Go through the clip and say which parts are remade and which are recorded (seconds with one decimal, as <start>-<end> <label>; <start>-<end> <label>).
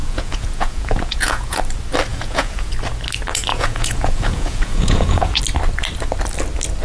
0.0-1.6 remade; 1.6-2.1 recorded; 2.1-2.7 remade; 2.7-3.5 recorded; 3.5-5.4 remade; 5.4-6.8 recorded